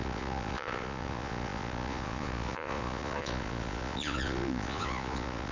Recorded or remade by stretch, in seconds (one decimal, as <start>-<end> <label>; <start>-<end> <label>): 0.0-5.5 remade